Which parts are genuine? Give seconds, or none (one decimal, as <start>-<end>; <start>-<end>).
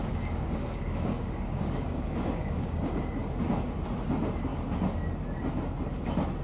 2.8-6.4